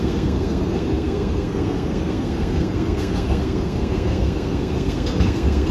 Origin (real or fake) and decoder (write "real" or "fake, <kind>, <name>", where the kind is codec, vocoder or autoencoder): fake, codec, SNAC